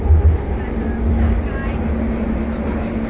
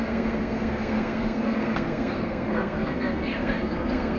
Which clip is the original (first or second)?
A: first